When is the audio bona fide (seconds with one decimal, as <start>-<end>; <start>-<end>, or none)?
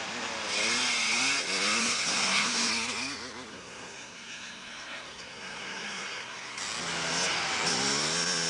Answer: 0.0-1.8; 2.7-3.5; 6.6-8.5